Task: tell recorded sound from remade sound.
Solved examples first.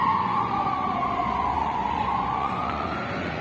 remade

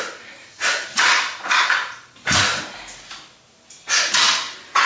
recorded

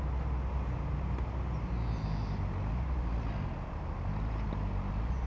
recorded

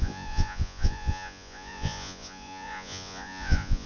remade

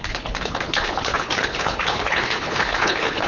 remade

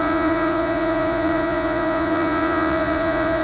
remade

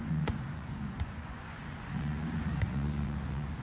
remade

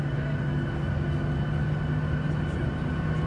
recorded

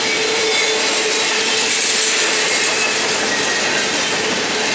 recorded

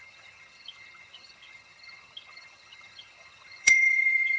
remade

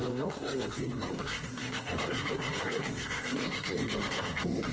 remade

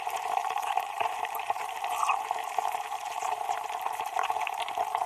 remade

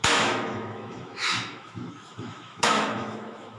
remade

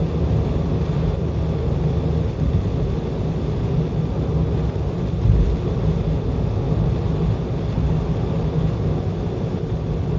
recorded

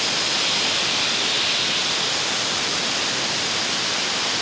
recorded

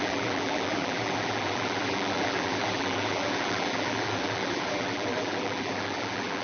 remade